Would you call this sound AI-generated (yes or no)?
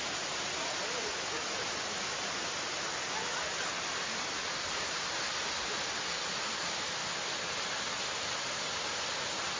no